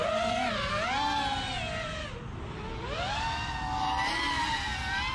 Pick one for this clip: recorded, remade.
recorded